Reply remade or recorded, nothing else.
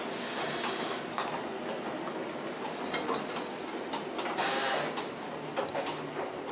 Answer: recorded